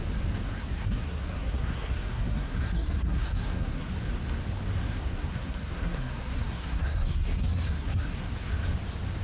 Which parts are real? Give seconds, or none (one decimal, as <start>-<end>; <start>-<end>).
0.0-0.4; 3.9-4.9; 8.5-9.2